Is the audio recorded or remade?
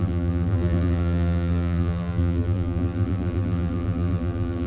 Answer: remade